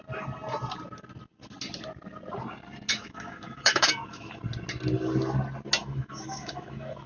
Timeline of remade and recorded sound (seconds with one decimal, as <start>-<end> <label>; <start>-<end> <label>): 0.0-2.9 recorded; 2.9-4.4 remade; 4.4-5.8 recorded; 5.8-7.1 remade